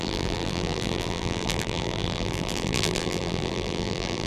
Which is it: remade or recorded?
remade